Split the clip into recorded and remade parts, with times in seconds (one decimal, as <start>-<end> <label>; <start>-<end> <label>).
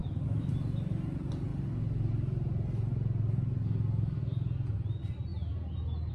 0.0-0.5 remade; 0.5-6.1 recorded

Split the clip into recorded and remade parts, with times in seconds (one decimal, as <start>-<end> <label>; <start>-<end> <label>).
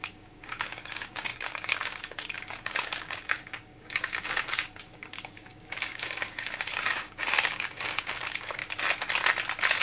0.0-8.6 remade; 8.6-9.8 recorded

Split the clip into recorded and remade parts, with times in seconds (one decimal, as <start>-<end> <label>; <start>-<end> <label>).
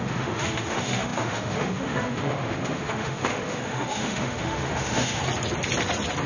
0.0-5.2 remade; 5.2-6.3 recorded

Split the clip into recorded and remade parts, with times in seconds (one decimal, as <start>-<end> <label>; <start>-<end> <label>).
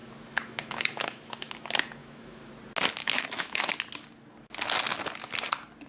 0.0-1.5 remade; 1.5-2.0 recorded; 2.0-2.5 remade; 2.5-3.0 recorded; 3.0-3.7 remade; 3.7-5.9 recorded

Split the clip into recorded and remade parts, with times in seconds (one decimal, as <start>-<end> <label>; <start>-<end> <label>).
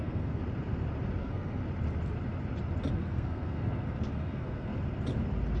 0.0-0.4 remade; 0.4-1.2 recorded; 1.2-1.6 remade; 1.6-2.9 recorded; 2.9-4.7 remade; 4.7-5.6 recorded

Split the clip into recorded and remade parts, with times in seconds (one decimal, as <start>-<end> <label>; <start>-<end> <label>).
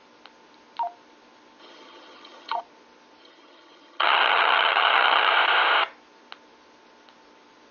0.0-1.6 recorded; 1.6-2.6 remade; 2.6-3.2 recorded; 3.2-5.3 remade; 5.3-7.7 recorded